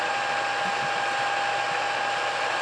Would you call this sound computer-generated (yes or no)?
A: no